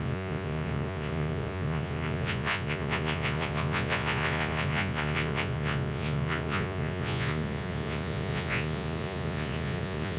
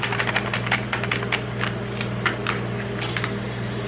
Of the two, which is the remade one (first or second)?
first